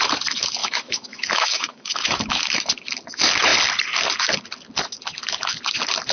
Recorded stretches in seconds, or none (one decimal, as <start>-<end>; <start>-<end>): 0.0-0.6; 2.7-6.1

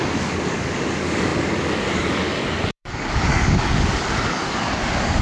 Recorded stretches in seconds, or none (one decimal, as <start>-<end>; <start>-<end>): none